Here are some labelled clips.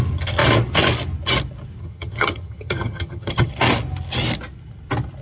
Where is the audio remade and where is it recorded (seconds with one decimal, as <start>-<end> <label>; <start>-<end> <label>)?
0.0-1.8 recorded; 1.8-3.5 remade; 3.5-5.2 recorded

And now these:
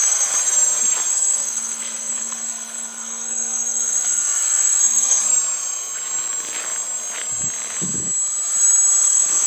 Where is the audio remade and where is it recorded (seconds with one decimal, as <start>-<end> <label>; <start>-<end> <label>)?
0.0-1.1 recorded; 1.1-5.2 remade; 5.2-9.5 recorded

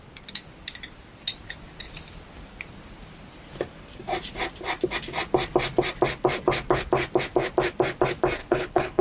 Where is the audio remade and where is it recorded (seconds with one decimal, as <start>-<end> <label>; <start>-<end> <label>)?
0.0-8.4 recorded; 8.4-9.0 remade